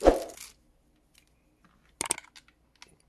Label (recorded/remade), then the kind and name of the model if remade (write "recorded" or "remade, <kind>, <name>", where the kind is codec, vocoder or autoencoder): recorded